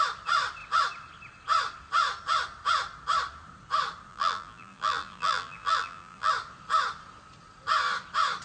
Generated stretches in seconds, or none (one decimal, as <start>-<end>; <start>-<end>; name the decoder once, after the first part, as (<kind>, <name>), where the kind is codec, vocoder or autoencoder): 4.1-6.3 (vocoder, BigVGAN v2)